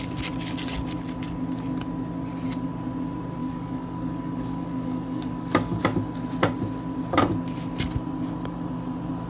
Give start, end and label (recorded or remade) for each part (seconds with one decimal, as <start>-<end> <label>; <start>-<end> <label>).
0.0-3.4 recorded; 3.4-5.8 remade; 5.8-9.3 recorded